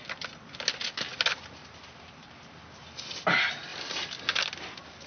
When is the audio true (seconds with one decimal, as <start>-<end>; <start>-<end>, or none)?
0.0-1.6; 2.6-5.1